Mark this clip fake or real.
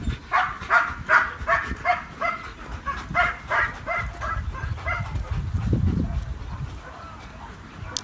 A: real